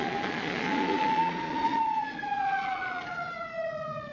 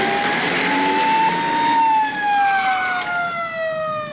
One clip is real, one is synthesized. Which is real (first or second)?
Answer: second